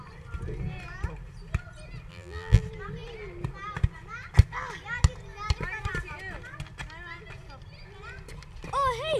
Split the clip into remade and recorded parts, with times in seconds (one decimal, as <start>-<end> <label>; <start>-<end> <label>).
0.0-2.1 recorded; 2.1-2.6 remade; 2.6-9.2 recorded